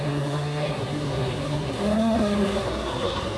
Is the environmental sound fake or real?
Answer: fake